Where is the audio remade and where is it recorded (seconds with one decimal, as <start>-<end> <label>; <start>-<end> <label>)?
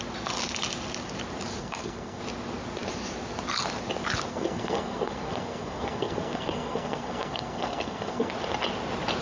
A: 0.0-1.6 recorded; 1.6-2.2 remade; 2.2-4.3 recorded; 4.3-8.3 remade; 8.3-9.2 recorded